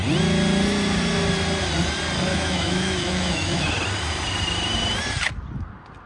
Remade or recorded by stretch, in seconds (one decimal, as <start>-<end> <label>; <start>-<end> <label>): 0.0-2.3 recorded; 2.3-3.7 remade; 3.7-6.1 recorded